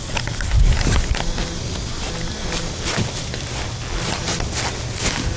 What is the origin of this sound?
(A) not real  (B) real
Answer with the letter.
B